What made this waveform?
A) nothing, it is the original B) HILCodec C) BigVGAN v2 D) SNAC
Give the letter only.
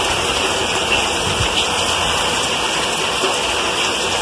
C